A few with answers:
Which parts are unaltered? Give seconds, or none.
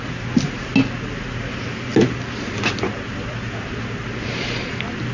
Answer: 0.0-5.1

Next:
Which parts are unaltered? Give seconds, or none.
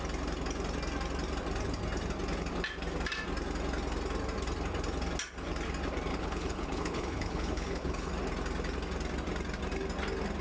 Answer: 0.0-6.1; 8.1-10.4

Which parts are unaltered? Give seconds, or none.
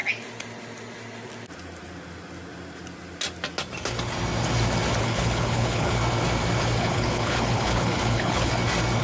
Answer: 0.0-5.0; 6.0-6.8; 8.5-9.0